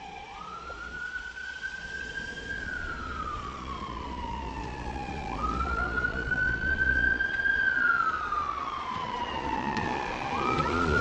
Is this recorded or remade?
remade